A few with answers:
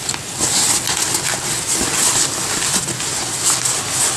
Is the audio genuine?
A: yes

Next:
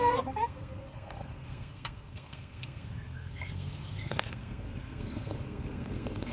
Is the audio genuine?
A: no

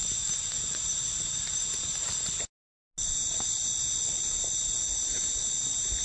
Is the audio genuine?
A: yes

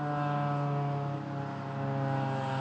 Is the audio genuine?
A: yes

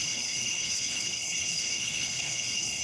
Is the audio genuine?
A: no